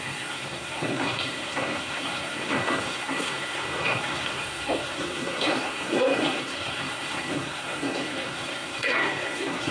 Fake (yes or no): yes